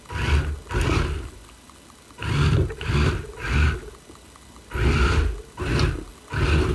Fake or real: real